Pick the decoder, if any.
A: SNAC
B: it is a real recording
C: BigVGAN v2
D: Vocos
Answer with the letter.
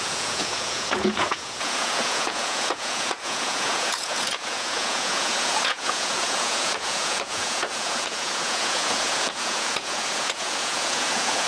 D